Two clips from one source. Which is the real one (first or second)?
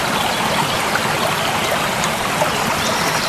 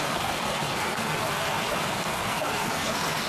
first